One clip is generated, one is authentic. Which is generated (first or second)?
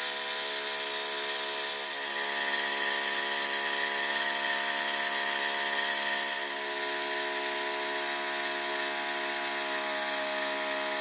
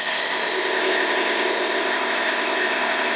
second